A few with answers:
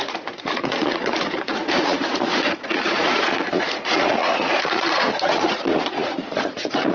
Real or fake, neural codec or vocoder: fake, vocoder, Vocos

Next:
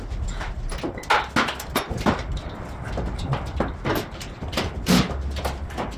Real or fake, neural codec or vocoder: real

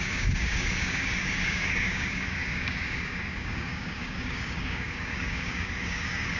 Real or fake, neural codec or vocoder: fake, codec, DAC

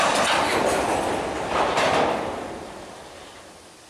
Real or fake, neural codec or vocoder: real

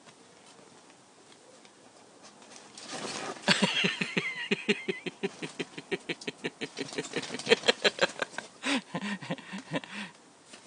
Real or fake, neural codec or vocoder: real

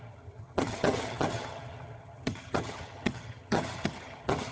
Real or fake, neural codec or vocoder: fake, vocoder, HiFi-GAN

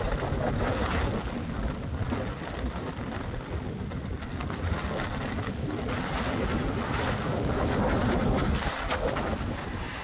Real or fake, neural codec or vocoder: real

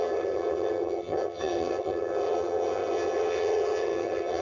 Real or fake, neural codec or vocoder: fake, vocoder, HiFi-GAN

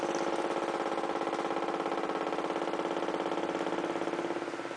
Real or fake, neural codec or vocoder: real